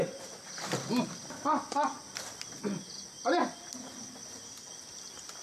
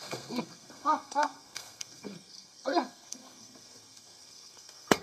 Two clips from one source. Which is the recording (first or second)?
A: first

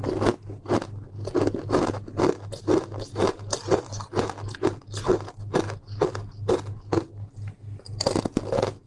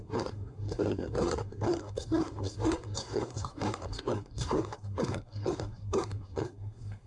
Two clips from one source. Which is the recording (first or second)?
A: first